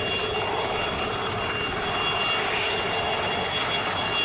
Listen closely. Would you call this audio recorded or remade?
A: recorded